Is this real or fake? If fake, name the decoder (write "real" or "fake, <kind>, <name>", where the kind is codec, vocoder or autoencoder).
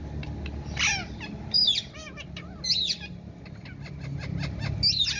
real